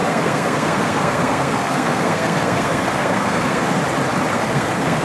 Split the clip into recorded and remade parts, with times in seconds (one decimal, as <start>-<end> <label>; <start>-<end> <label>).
0.0-3.8 remade; 3.8-4.3 recorded; 4.3-5.0 remade